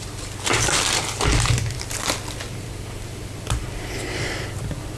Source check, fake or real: real